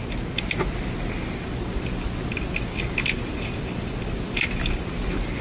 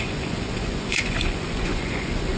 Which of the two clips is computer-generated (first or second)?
second